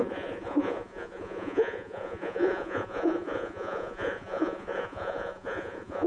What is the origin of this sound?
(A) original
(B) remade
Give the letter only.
B